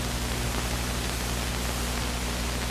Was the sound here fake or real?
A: real